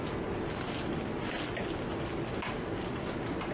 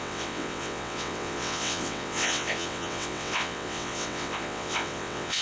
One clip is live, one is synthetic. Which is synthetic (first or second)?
second